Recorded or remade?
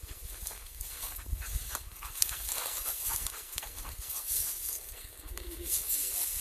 remade